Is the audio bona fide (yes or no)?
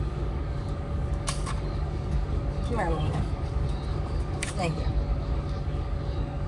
no